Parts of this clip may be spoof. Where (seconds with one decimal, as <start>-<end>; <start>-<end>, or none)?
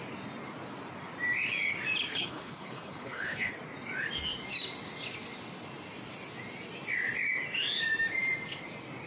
2.1-3.5